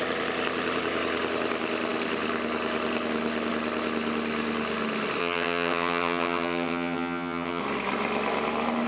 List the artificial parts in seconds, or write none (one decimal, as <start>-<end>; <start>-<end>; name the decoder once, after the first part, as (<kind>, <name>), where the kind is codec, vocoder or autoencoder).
5.2-7.6 (vocoder, HiFi-GAN)